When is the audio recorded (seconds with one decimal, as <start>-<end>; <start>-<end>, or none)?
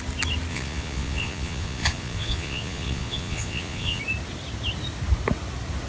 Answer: 0.0-0.5; 4.0-5.9